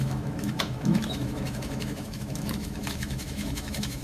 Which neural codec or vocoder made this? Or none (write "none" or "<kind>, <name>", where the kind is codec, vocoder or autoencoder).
autoencoder, DAC-VAE